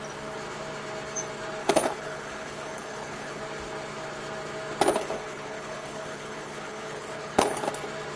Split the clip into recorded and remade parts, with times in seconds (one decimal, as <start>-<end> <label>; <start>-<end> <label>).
0.0-1.6 recorded; 1.6-3.4 remade; 3.4-4.9 recorded; 4.9-7.7 remade; 7.7-8.2 recorded